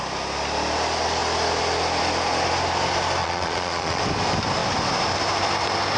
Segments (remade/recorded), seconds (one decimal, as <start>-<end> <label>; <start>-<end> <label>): 0.0-3.2 recorded; 3.2-4.0 remade; 4.0-6.0 recorded